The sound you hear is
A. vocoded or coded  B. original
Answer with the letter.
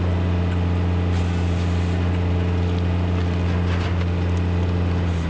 B